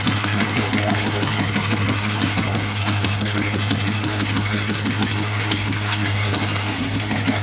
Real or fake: fake